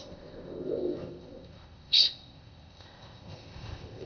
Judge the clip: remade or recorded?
remade